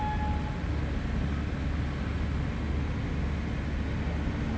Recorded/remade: recorded